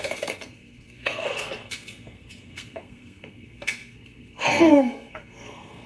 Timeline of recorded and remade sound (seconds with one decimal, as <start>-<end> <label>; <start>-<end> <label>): 0.0-5.9 remade